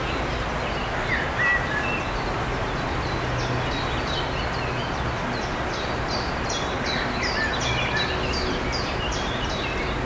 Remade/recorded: recorded